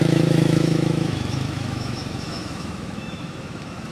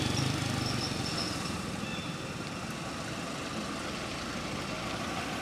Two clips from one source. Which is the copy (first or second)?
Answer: first